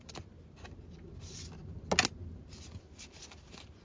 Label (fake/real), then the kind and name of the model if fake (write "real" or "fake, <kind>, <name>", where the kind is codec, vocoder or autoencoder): real